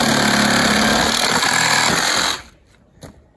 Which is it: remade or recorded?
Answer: recorded